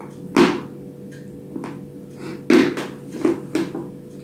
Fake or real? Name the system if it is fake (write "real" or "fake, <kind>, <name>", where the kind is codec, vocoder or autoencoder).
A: real